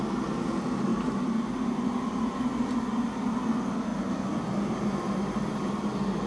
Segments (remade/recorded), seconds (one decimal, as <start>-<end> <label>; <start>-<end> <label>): 0.0-6.3 recorded